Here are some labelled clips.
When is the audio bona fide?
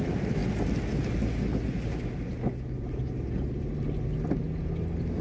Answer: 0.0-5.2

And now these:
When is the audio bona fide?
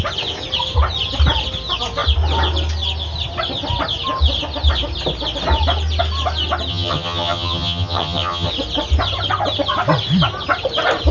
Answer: 0.0-6.7; 8.5-11.1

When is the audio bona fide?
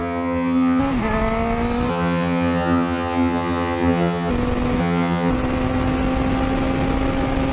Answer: 0.8-1.9; 4.3-4.8; 5.3-7.5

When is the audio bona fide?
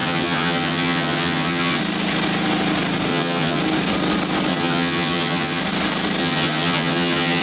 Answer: 1.8-3.1; 3.6-4.5; 5.6-6.2